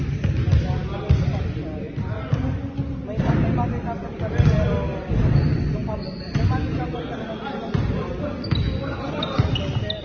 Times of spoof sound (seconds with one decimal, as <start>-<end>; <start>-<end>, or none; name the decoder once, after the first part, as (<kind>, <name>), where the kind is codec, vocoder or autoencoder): none